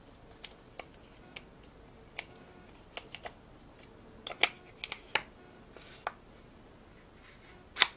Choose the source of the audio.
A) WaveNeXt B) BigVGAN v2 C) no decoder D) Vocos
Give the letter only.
C